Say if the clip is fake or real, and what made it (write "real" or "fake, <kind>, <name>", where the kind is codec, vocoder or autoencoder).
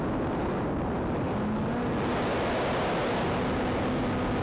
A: real